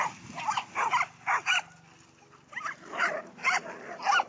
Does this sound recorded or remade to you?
recorded